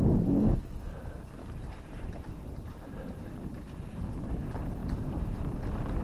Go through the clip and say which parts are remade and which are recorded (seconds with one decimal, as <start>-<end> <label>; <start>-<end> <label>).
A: 0.0-1.4 recorded; 1.4-3.9 remade; 3.9-4.8 recorded; 4.8-5.4 remade; 5.4-6.0 recorded